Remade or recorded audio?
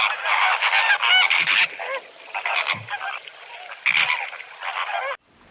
recorded